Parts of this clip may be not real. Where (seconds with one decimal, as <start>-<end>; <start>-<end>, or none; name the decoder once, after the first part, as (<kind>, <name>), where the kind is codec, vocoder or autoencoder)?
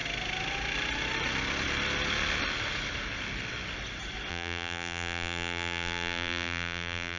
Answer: 4.3-7.2 (vocoder, BigVGAN v2)